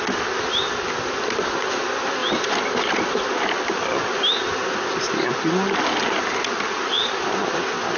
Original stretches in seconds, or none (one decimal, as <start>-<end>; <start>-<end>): 0.0-8.0